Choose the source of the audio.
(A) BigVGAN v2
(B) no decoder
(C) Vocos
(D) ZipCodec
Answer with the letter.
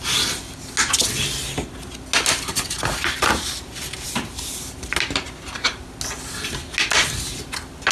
B